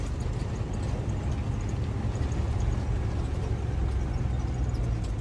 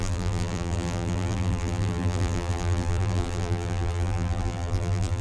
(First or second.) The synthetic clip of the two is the second